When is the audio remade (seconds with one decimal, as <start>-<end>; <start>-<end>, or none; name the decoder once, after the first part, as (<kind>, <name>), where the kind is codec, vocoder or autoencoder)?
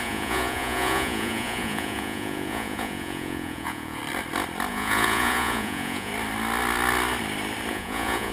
0.0-4.0 (vocoder, Vocos); 4.7-6.1; 7.7-8.3